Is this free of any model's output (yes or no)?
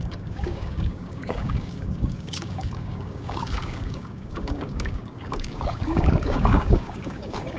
no